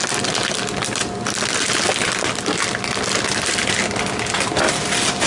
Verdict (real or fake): real